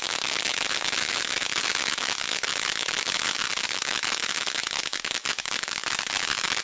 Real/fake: fake